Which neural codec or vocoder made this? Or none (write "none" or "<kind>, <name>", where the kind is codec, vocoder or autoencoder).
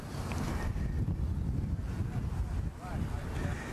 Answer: none